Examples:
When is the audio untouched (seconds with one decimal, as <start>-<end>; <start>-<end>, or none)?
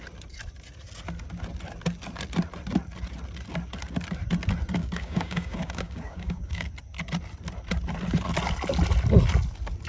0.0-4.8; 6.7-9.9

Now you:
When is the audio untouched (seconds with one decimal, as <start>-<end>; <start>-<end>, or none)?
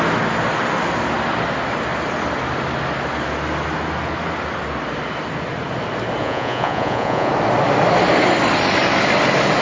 0.0-6.2; 7.3-9.6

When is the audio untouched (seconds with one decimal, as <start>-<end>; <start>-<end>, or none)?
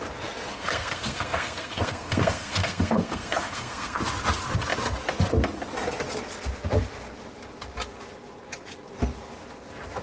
0.0-0.5; 4.0-10.0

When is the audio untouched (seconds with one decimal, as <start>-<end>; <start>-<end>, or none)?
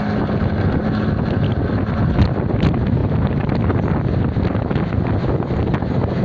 0.0-3.0; 3.5-6.2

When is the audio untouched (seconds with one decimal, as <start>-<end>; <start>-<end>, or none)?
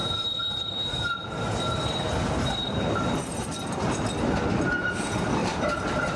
3.6-5.4